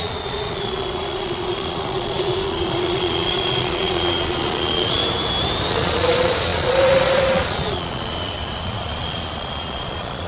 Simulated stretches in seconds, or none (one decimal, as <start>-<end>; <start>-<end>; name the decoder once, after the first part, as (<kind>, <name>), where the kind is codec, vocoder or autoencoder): 0.0-5.0 (vocoder, Vocos); 5.7-10.3